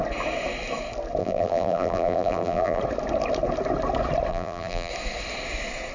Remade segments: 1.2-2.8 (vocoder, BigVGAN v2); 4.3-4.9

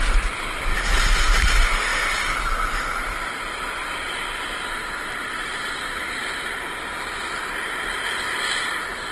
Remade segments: 1.9-6.1 (vocoder, BigVGAN v2)

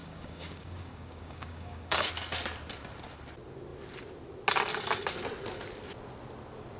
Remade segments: 0.0-2.1 (codec, DAC)

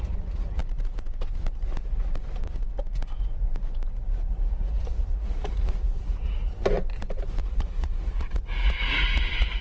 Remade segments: 0.0-0.6 (vocoder, Vocos); 4.3-6.6; 7.4-9.6

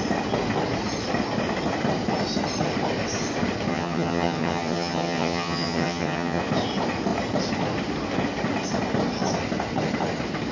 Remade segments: 3.7-6.4 (vocoder, HiFi-GAN)

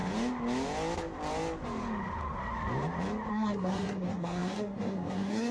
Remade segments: 3.3-5.5 (codec, SNAC)